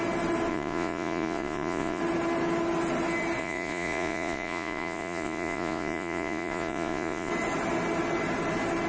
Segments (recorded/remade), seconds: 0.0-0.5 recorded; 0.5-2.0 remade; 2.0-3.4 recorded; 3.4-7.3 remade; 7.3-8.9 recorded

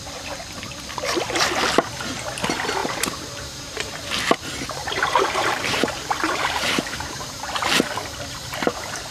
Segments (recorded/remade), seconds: 0.0-2.8 recorded; 2.8-4.0 remade; 4.0-4.8 recorded; 4.8-7.3 remade; 7.3-9.1 recorded